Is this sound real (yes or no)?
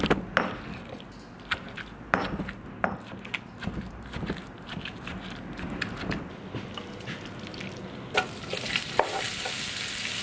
yes